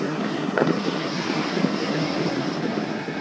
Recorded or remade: remade